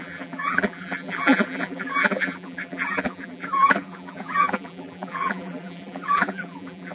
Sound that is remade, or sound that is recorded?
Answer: remade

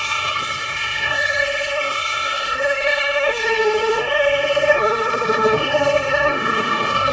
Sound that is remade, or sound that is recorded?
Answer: remade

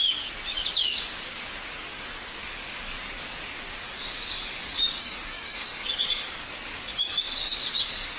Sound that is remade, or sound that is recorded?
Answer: remade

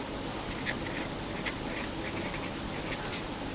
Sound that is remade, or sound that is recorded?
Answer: recorded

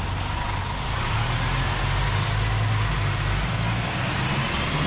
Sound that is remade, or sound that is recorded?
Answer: recorded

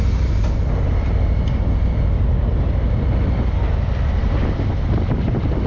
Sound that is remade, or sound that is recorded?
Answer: remade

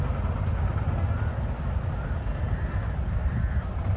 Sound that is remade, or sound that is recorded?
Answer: recorded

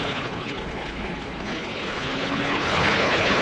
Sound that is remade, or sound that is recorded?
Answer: remade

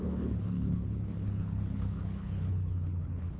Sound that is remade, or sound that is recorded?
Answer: remade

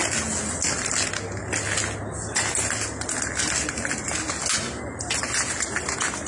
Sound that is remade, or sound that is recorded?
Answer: recorded